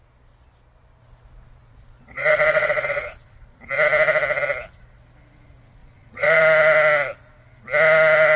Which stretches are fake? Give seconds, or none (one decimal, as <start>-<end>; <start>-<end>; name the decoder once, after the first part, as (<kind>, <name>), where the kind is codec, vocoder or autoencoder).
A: 1.6-3.6 (vocoder, Vocos); 5.8-6.4